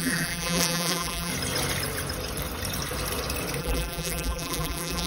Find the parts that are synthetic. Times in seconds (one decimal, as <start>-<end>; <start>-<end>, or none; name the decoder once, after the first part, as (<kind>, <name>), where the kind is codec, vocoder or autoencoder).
0.0-1.3 (vocoder, BigVGAN v2); 3.6-5.1